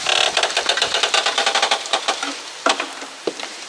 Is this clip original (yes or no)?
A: no